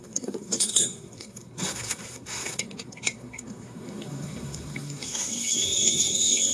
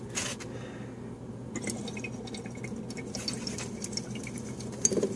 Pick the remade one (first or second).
first